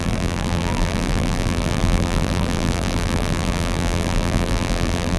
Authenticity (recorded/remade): remade